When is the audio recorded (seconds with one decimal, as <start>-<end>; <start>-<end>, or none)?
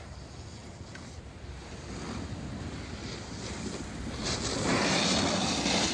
0.0-5.9